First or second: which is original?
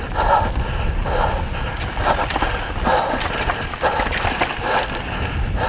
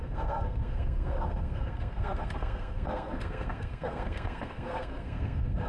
first